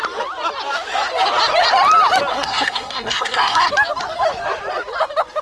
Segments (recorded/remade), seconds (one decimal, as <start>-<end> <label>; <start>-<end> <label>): 0.0-2.3 recorded; 2.3-3.7 remade; 3.7-5.4 recorded